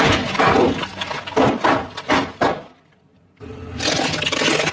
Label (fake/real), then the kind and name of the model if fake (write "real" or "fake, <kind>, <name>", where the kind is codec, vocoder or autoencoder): real